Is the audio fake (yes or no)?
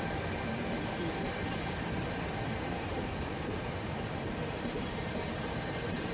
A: yes